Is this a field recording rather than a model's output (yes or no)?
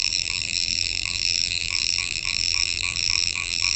no